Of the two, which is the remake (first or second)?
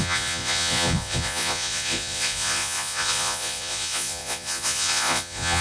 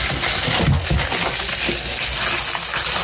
first